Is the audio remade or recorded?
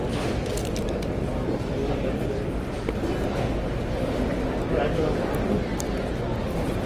recorded